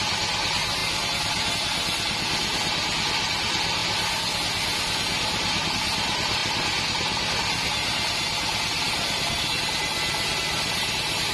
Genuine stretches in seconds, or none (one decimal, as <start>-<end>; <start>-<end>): 0.0-11.3